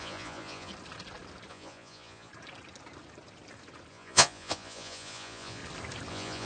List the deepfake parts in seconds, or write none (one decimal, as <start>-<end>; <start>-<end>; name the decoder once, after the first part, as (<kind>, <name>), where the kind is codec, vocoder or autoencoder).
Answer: 0.0-0.7 (vocoder, Vocos); 1.5-2.3; 3.9-5.6; 6.1-6.5